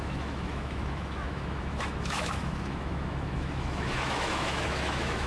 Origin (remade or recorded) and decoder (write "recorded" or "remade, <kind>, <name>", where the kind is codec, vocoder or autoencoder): remade, autoencoder, DAC-VAE